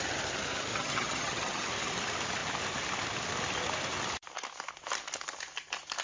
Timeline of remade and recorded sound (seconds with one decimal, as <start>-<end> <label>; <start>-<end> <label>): 0.0-0.7 recorded; 0.7-1.7 remade; 1.7-6.0 recorded